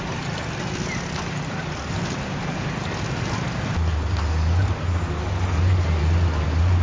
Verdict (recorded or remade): recorded